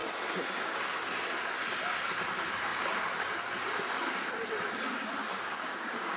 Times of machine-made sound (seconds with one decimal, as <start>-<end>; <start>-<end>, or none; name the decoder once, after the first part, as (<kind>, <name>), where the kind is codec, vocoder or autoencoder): 5.3-6.2 (codec, DAC)